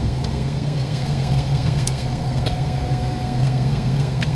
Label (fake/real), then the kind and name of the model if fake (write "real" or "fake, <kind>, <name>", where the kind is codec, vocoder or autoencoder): fake, codec, SNAC